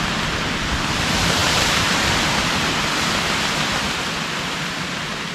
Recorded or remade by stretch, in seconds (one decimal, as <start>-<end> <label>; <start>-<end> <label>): 0.0-5.3 recorded